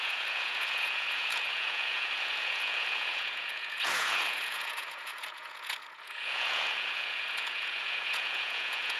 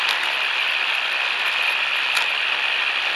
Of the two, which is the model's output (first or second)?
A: first